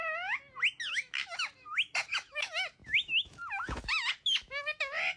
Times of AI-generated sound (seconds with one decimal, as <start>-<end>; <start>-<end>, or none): 0.9-5.2